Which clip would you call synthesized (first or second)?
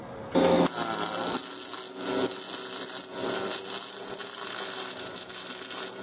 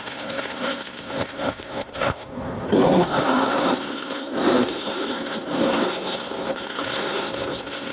second